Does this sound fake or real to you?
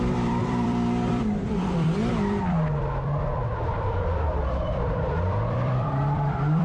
fake